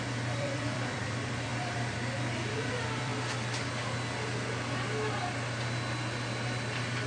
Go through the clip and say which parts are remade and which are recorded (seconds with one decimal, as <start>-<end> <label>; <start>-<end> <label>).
0.0-3.1 remade; 3.1-7.1 recorded